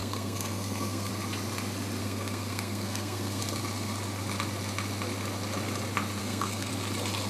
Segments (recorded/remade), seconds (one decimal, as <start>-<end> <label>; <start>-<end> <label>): 0.0-1.1 remade; 1.1-2.0 recorded; 2.0-3.4 remade; 3.4-6.2 recorded; 6.2-6.7 remade; 6.7-7.3 recorded

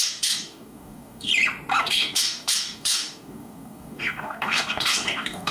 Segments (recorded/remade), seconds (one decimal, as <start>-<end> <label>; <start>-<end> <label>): 0.0-1.3 remade; 1.3-1.8 recorded; 1.8-5.5 remade

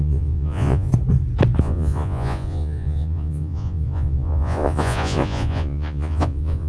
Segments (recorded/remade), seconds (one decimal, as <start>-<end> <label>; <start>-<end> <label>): 0.0-0.9 remade; 0.9-1.6 recorded; 1.6-6.7 remade

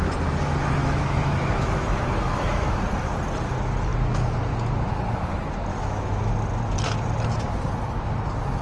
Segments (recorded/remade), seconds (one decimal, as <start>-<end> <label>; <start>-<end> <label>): 0.0-0.8 recorded; 0.8-2.7 remade; 2.7-5.7 recorded; 5.7-6.3 remade; 6.3-8.6 recorded

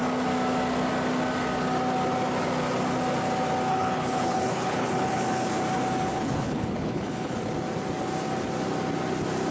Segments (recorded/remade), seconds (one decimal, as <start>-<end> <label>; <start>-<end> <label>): 0.0-3.7 recorded; 3.7-5.6 remade; 5.6-6.1 recorded; 6.1-7.4 remade; 7.4-9.5 recorded

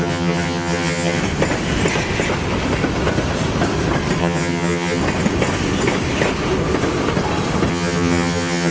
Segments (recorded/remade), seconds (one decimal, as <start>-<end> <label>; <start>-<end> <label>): 0.0-1.2 remade; 1.2-4.2 recorded; 4.2-5.0 remade; 5.0-7.7 recorded; 7.7-8.7 remade

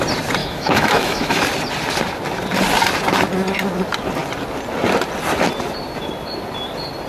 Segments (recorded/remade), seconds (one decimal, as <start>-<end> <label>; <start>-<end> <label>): 0.0-0.4 recorded; 0.4-1.4 remade; 1.4-7.1 recorded

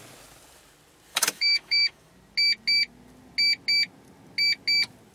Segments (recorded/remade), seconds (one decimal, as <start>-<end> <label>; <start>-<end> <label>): 0.0-1.1 recorded; 1.1-2.1 remade; 2.1-5.1 recorded